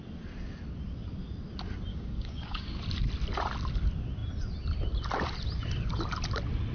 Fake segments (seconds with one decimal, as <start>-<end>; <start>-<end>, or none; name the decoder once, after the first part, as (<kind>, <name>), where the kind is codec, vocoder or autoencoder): 1.9-2.8 (codec, DAC)